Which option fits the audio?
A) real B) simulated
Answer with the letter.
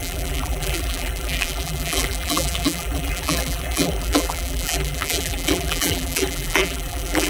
B